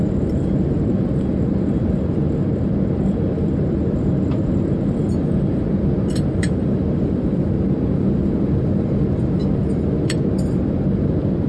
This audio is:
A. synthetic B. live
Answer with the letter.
A